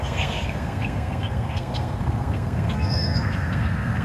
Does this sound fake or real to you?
fake